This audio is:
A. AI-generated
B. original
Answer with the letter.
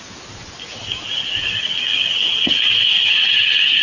B